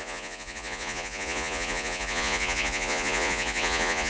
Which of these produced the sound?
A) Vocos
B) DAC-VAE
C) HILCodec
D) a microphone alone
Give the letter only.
A